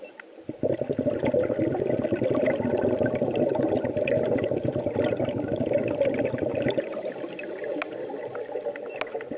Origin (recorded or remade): recorded